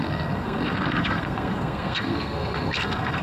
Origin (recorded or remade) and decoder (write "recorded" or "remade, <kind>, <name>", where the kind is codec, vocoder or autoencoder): remade, codec, SNAC